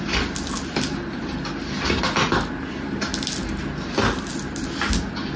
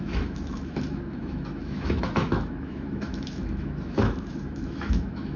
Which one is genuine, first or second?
first